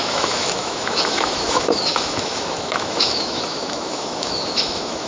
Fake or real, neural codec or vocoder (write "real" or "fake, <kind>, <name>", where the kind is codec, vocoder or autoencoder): fake, autoencoder, DAC-VAE